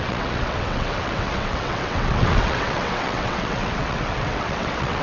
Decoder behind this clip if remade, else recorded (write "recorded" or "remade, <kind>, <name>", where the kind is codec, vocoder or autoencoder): remade, vocoder, WaveNeXt